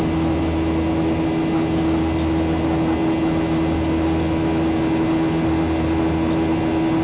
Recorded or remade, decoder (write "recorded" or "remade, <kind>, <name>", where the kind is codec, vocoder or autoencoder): recorded